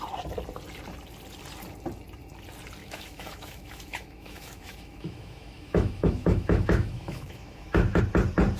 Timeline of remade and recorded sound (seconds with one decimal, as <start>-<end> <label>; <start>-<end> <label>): 0.0-2.8 recorded; 2.8-8.0 remade; 8.0-8.6 recorded